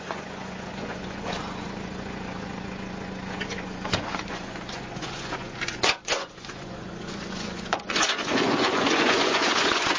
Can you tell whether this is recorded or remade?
remade